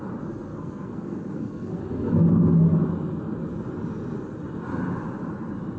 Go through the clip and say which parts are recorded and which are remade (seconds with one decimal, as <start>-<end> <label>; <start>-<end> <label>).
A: 0.0-0.5 recorded; 0.5-1.8 remade; 1.8-5.8 recorded